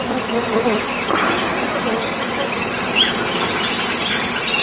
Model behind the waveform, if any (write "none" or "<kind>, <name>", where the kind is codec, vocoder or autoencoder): none